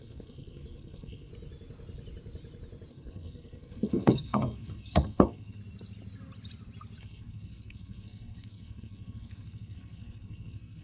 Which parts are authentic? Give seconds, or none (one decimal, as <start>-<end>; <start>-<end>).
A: 1.3-2.9; 5.6-7.0